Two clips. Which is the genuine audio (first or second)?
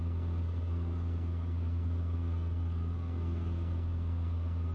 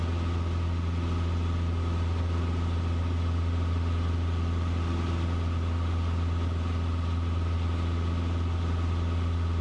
second